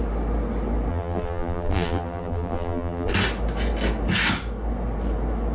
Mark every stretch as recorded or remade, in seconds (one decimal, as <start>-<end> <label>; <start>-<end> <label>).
0.0-0.9 recorded; 0.9-3.1 remade; 3.1-5.5 recorded